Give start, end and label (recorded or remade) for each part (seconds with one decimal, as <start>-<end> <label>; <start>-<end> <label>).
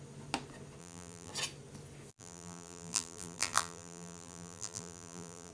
0.0-0.8 recorded; 0.8-1.3 remade; 1.3-2.1 recorded; 2.1-5.5 remade